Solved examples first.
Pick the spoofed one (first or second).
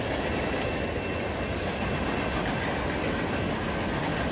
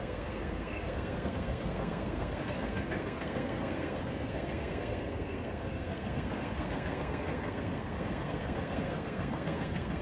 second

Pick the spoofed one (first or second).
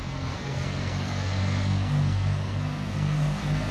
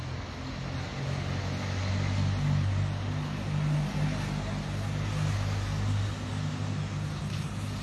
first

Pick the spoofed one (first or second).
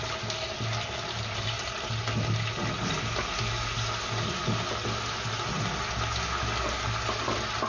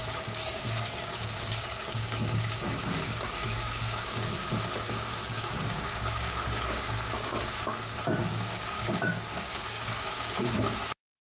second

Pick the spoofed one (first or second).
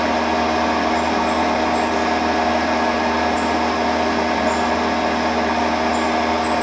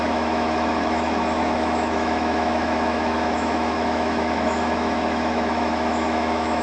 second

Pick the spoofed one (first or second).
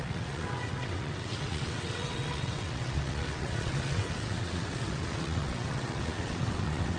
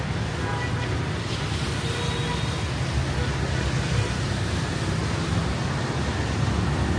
first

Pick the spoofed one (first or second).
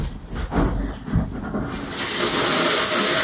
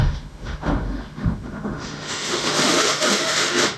second